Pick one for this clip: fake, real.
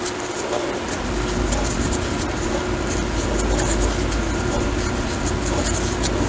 real